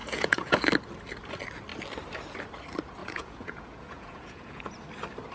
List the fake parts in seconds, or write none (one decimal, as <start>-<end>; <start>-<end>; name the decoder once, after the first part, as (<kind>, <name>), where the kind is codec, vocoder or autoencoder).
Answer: 0.0-0.6 (vocoder, Vocos); 3.0-4.7